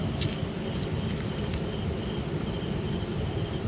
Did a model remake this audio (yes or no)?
no